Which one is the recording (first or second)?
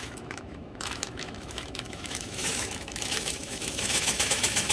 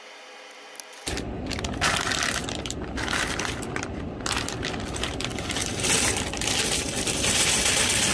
second